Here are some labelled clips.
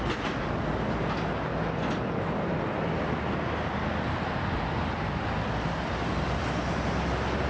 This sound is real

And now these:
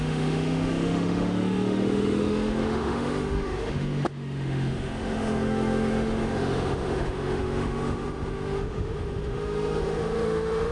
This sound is fake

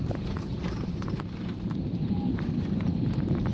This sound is fake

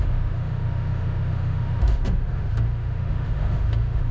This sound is fake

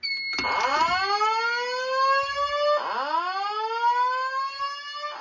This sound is real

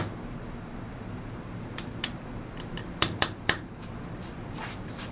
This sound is fake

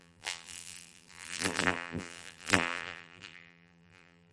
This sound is fake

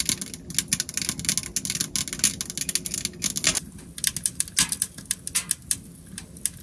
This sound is real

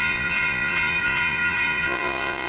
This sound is fake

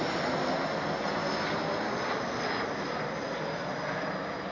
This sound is real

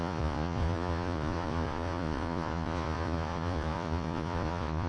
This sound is fake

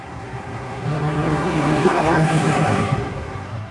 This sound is fake